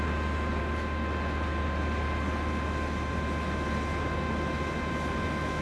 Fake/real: real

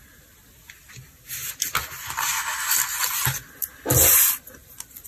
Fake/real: real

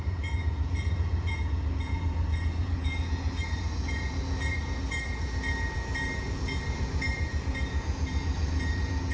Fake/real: fake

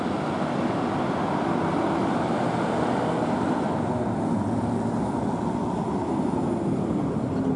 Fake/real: real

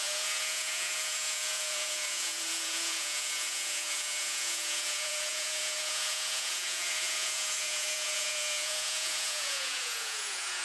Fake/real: fake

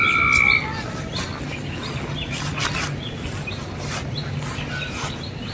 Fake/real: real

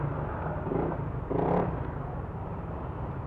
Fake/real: real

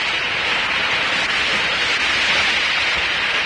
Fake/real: real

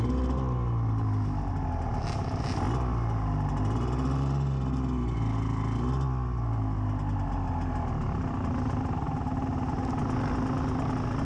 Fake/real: real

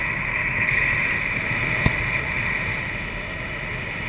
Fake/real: real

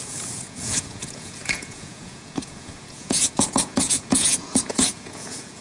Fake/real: fake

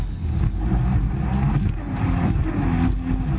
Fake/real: real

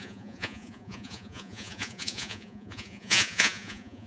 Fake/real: fake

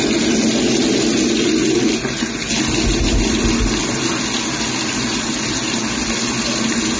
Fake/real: real